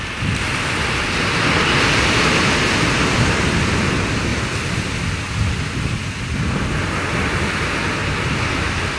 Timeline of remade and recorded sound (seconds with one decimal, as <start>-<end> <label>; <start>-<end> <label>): 0.0-9.0 recorded